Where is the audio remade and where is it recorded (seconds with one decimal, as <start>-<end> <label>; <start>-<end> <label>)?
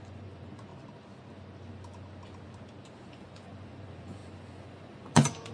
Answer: 0.0-0.7 remade; 0.7-3.1 recorded; 3.1-5.5 remade